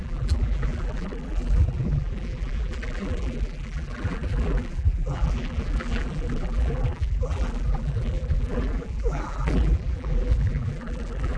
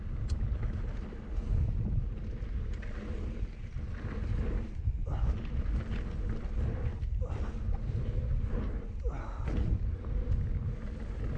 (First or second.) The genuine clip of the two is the second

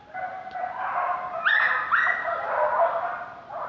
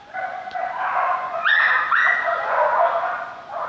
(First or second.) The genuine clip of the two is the first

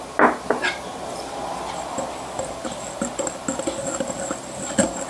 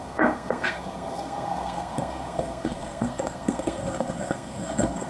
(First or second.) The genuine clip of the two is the first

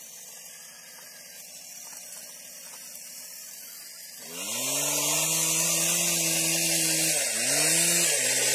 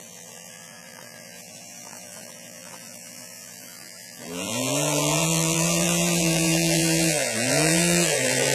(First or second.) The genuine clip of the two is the first